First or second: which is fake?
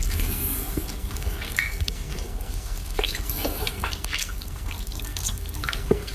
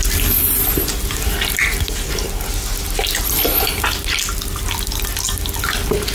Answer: first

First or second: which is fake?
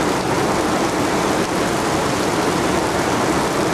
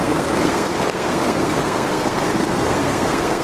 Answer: second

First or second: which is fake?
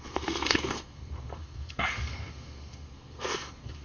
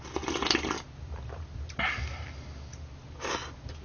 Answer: first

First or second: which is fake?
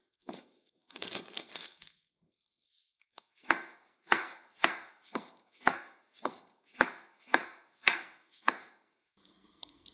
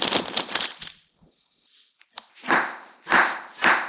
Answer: first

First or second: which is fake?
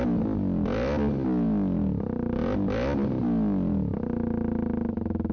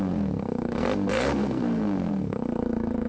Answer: second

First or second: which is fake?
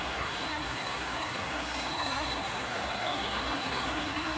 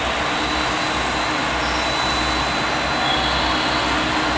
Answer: first